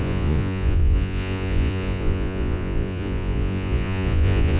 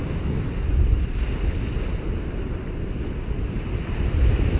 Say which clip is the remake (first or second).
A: first